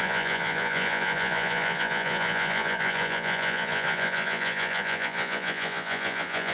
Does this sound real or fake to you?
fake